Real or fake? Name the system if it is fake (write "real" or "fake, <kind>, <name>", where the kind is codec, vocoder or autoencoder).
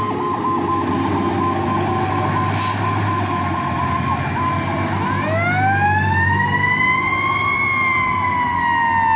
real